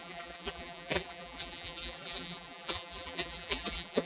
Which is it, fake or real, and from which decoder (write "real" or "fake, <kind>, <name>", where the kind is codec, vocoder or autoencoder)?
fake, vocoder, BigVGAN v2